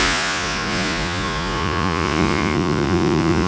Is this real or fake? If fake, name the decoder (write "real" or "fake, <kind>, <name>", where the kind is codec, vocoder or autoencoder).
fake, vocoder, Vocos